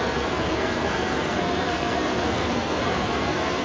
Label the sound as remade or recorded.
remade